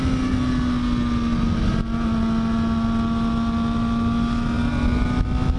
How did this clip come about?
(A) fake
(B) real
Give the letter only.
B